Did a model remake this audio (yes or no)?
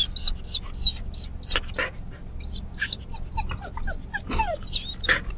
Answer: no